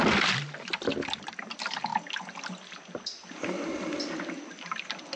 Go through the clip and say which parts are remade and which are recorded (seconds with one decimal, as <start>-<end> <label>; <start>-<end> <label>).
0.0-5.2 recorded